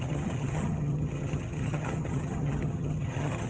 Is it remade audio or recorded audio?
remade